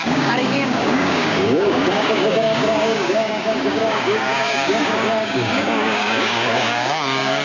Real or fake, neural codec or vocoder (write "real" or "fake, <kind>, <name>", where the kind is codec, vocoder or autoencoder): fake, codec, DAC